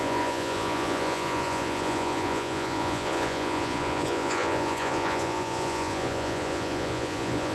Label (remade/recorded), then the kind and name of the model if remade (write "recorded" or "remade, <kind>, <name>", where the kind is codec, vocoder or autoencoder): remade, vocoder, Vocos